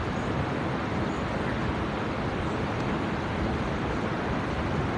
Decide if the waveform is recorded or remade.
recorded